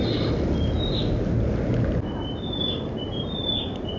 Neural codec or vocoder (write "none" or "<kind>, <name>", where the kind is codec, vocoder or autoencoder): none